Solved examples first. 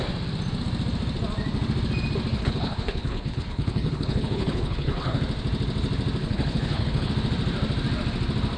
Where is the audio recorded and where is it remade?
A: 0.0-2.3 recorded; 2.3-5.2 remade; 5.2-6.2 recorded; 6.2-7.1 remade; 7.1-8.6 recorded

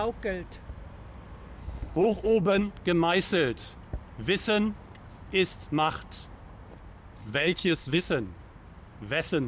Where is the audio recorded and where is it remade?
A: 0.0-1.6 recorded; 1.6-2.7 remade; 2.7-7.2 recorded; 7.2-8.0 remade; 8.0-9.5 recorded